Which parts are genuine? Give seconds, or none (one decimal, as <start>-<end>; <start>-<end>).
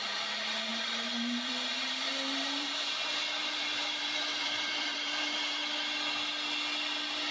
0.0-0.7; 2.7-3.4; 5.6-7.3